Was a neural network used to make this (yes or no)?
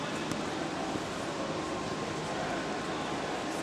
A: no